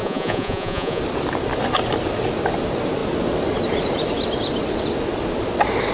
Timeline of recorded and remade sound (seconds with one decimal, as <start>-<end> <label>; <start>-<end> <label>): 0.0-1.0 remade; 1.0-5.9 recorded